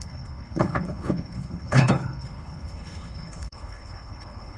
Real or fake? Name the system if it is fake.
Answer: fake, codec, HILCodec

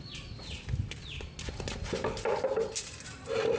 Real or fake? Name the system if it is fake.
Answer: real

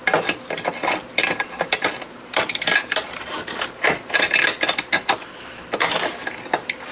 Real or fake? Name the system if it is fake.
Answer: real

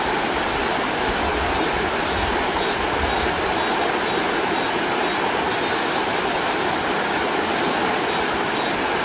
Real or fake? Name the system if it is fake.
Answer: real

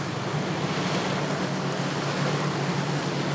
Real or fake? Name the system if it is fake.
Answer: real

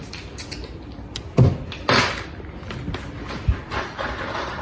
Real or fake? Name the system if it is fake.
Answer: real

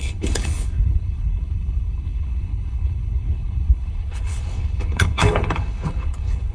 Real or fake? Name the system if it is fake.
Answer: fake, codec, HILCodec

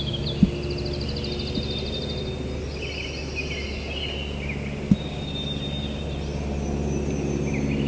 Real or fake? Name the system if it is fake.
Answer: real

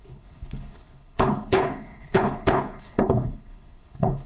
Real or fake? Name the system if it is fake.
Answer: fake, codec, HILCodec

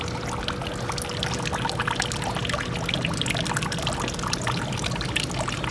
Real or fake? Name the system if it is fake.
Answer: real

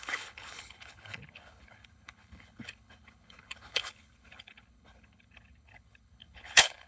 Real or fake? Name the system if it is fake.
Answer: fake, codec, HILCodec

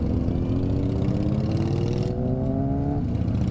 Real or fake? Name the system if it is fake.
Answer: real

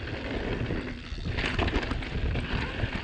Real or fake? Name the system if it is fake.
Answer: real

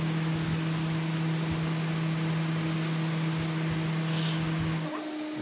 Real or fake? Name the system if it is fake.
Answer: real